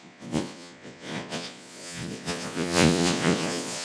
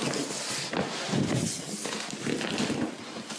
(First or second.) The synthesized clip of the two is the first